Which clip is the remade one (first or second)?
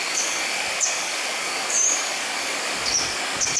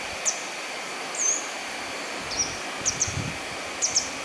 first